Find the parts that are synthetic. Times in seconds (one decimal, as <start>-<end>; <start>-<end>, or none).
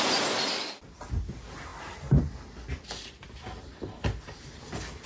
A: none